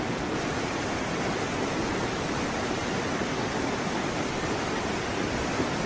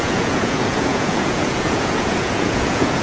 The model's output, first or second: second